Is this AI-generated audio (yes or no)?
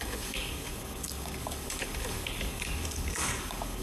yes